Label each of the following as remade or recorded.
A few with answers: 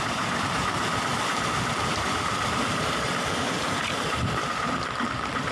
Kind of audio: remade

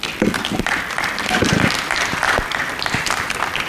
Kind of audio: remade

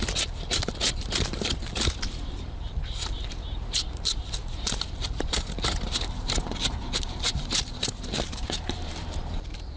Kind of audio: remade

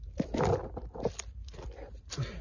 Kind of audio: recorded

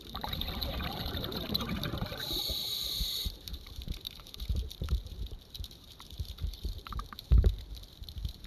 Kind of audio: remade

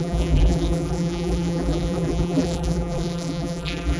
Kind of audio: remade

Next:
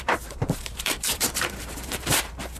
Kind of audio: remade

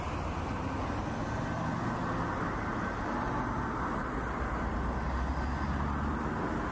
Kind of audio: recorded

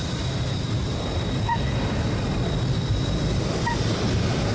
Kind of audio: remade